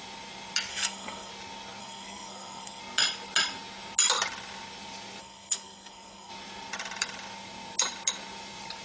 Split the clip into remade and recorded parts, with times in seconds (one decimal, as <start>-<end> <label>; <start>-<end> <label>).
0.0-0.7 recorded; 0.7-1.3 remade; 1.3-1.8 recorded; 1.8-2.8 remade; 2.8-5.2 recorded; 5.2-6.3 remade; 6.3-8.8 recorded